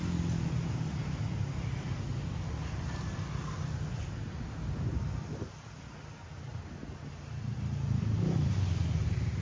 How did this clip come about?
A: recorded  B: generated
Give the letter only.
A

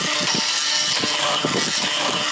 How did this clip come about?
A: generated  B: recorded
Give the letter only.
B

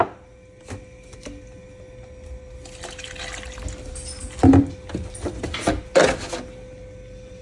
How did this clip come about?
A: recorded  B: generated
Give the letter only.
A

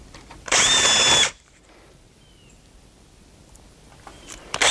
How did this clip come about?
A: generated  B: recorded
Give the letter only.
A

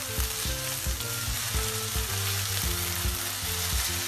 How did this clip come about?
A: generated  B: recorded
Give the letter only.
B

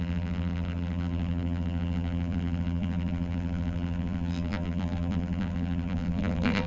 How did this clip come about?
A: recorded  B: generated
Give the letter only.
B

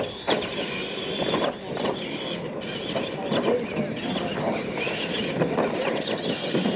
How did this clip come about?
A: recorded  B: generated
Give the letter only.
A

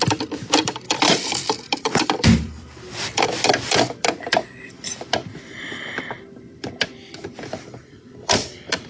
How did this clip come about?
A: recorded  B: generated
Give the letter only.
B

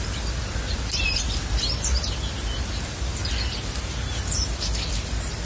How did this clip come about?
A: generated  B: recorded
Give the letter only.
B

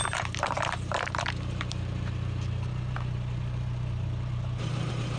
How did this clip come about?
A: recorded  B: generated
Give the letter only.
B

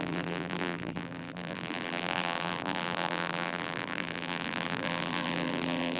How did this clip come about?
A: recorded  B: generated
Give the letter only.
B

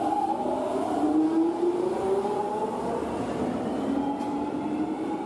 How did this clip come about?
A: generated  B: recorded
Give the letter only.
B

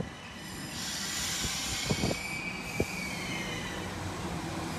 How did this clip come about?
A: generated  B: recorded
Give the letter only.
B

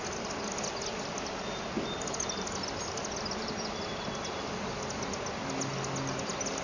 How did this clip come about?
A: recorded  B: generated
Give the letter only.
A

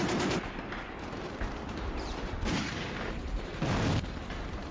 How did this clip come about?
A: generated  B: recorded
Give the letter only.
A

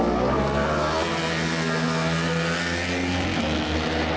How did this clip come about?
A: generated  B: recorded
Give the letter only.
B